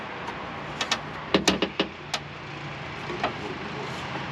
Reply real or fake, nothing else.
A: real